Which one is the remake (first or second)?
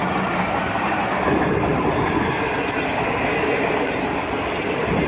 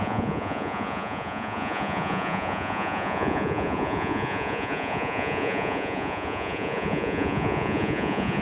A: second